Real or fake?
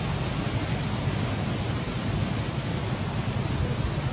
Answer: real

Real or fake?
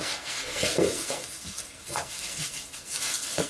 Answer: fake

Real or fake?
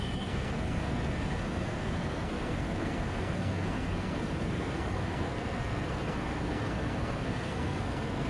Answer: fake